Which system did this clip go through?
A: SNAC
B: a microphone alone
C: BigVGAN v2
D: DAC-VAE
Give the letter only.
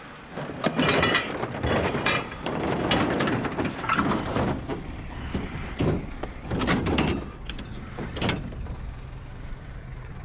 C